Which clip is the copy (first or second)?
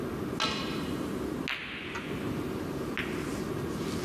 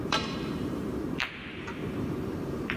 second